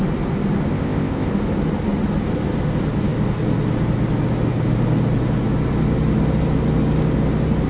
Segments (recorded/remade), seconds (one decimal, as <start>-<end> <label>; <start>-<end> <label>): 0.0-0.7 recorded; 0.7-1.3 remade; 1.3-7.7 recorded

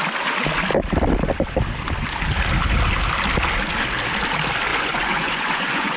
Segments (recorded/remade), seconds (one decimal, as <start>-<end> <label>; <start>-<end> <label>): 0.0-4.7 recorded; 4.7-6.0 remade

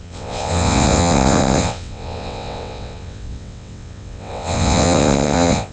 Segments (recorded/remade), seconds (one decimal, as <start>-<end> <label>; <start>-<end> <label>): 0.0-5.7 remade

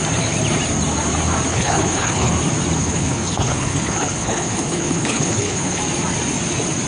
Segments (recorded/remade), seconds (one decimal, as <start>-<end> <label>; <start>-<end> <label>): 0.0-1.5 recorded; 1.5-2.3 remade; 2.3-2.8 recorded; 2.8-5.8 remade; 5.8-6.9 recorded

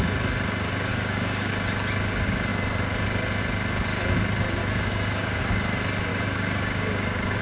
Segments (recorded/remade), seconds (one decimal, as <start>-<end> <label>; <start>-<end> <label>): 0.0-0.9 recorded; 0.9-1.5 remade; 1.5-4.6 recorded; 4.6-5.4 remade; 5.4-6.1 recorded; 6.1-7.4 remade

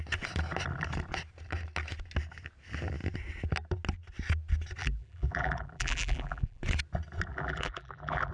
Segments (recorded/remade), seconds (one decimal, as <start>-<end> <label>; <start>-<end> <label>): 0.0-4.8 recorded; 4.8-6.6 remade; 6.6-7.3 recorded; 7.3-8.3 remade